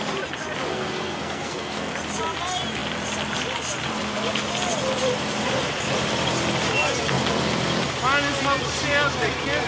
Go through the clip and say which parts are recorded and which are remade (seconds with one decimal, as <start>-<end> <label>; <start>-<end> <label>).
0.0-0.7 recorded; 0.7-1.9 remade; 1.9-9.7 recorded

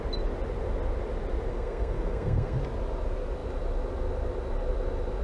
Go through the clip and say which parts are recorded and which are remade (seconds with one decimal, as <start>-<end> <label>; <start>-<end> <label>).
0.0-1.5 recorded; 1.5-2.6 remade; 2.6-5.2 recorded

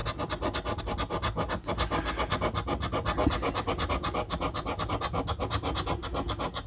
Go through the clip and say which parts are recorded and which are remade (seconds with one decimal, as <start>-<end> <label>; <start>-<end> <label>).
0.0-6.7 recorded